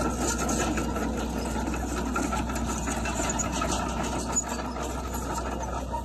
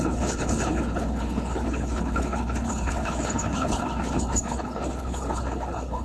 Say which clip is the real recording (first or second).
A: first